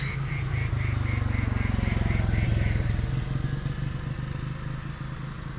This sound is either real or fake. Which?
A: real